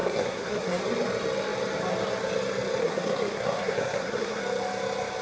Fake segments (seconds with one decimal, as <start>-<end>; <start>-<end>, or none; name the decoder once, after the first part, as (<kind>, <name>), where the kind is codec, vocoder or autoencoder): 0.0-0.8 (codec, SNAC); 2.8-4.4